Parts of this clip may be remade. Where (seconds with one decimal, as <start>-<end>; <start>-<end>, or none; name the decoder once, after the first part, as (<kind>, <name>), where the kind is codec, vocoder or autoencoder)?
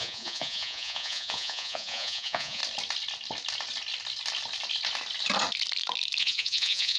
0.0-2.6 (vocoder, Vocos); 6.2-7.0